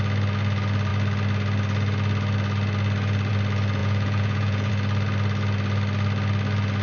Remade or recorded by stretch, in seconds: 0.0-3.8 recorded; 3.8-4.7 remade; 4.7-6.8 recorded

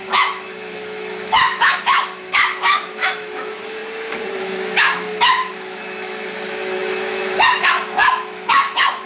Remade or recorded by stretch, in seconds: 0.0-3.8 remade; 3.8-4.4 recorded; 4.4-9.1 remade

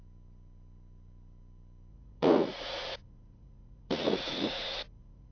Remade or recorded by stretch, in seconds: 0.0-1.9 recorded; 1.9-5.3 remade